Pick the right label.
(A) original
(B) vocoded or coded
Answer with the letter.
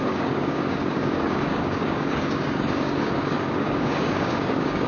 B